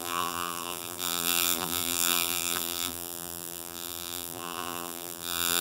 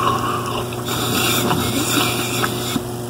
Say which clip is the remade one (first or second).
first